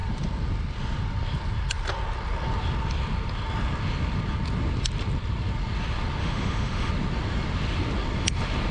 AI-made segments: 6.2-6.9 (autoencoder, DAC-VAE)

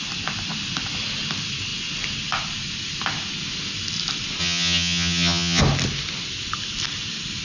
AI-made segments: 4.4-5.6 (vocoder, HiFi-GAN)